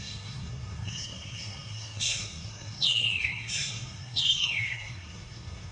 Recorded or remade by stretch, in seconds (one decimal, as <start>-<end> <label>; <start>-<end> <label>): 0.0-5.7 remade